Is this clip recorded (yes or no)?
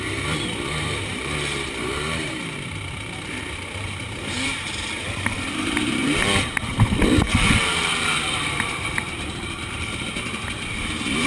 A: no